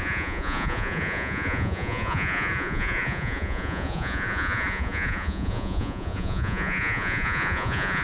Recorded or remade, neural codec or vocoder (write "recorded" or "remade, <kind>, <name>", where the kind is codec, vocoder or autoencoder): remade, vocoder, Vocos